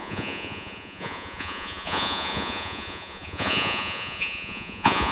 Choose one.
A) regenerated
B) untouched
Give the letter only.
A